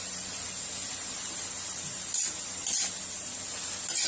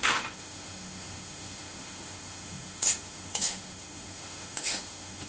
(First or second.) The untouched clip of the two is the first